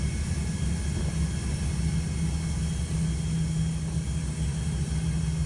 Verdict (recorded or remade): recorded